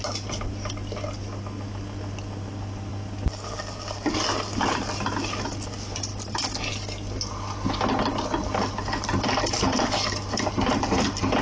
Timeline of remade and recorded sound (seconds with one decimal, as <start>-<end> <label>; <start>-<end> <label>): 0.0-11.4 recorded

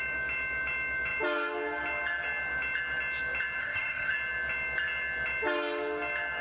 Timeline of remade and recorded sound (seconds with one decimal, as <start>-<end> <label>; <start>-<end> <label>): 0.0-3.6 recorded; 3.6-4.1 remade; 4.1-6.4 recorded

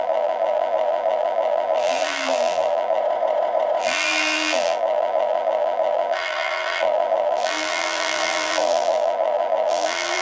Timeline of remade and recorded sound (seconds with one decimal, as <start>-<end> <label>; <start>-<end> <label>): 0.0-3.0 remade; 3.0-3.8 recorded; 3.8-10.2 remade